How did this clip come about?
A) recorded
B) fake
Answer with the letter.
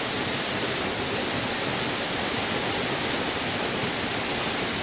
A